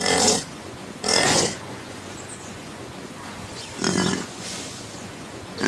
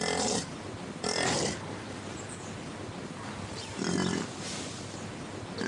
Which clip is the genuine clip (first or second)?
second